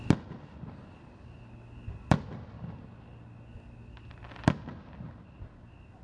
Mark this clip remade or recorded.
recorded